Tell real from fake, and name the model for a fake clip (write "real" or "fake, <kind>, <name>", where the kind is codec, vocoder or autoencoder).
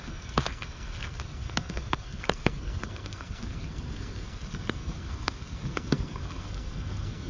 fake, codec, SNAC